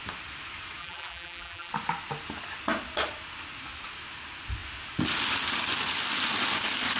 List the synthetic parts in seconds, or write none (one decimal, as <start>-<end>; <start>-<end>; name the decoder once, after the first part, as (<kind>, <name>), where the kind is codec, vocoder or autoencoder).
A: 0.8-1.7 (vocoder, BigVGAN v2)